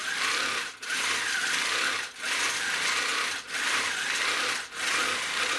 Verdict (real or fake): real